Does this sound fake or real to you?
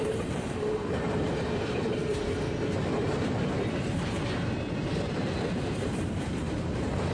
fake